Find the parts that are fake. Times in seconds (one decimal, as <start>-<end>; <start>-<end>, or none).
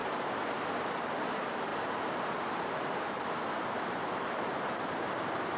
1.2-5.6